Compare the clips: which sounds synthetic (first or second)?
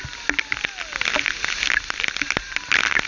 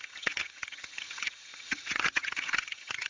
second